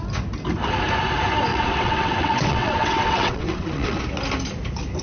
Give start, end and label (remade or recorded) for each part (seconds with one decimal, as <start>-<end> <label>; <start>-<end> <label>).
0.0-1.5 recorded; 1.5-4.0 remade; 4.0-5.0 recorded